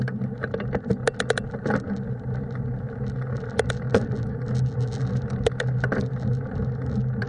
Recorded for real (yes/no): yes